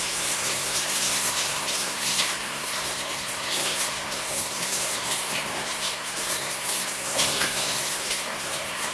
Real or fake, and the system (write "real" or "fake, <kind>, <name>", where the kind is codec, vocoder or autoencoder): fake, codec, SNAC